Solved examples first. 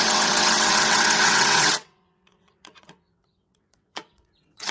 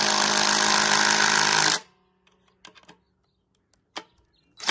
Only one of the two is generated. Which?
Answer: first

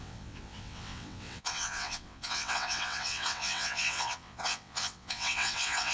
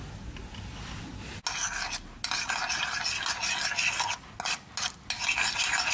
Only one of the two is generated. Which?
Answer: first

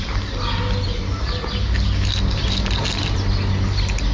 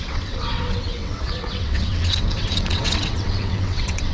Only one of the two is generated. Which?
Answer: second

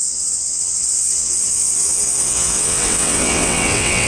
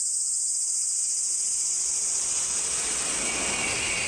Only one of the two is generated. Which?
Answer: first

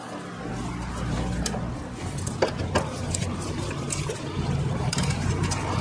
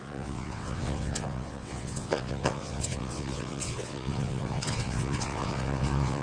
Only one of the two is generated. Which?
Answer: second